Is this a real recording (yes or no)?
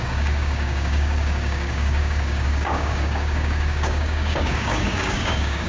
no